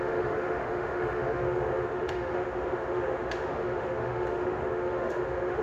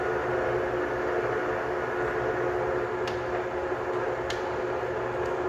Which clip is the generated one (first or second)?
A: first